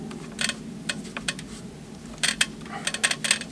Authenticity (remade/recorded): recorded